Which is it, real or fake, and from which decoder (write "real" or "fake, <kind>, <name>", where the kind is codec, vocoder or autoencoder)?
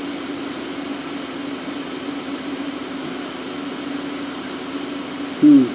real